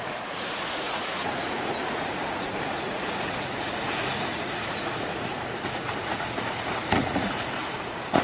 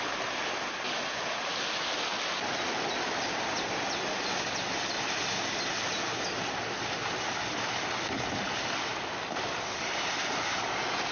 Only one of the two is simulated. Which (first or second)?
first